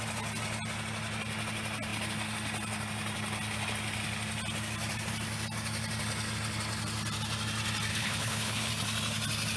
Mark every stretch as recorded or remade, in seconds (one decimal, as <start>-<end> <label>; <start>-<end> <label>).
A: 0.0-7.9 recorded; 7.9-8.7 remade; 8.7-9.6 recorded